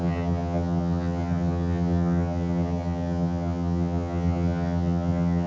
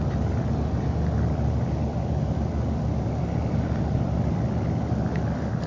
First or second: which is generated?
first